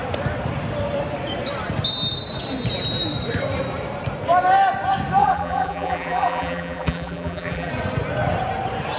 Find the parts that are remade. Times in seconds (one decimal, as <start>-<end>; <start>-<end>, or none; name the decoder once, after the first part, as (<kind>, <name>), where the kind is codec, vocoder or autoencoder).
5.2-7.7 (vocoder, BigVGAN v2)